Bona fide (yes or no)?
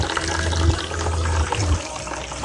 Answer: yes